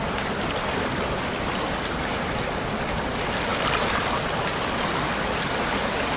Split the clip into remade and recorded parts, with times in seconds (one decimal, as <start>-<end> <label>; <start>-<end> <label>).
0.0-3.5 remade; 3.5-6.2 recorded

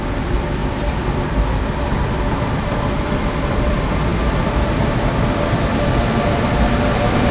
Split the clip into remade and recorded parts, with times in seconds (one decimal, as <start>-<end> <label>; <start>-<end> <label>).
0.0-4.1 remade; 4.1-5.3 recorded; 5.3-7.3 remade